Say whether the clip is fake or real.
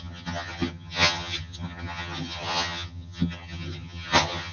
fake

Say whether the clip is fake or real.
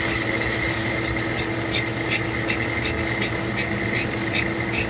real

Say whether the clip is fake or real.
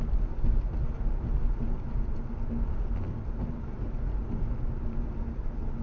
real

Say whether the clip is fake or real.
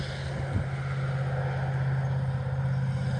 real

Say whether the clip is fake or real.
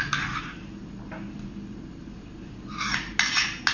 real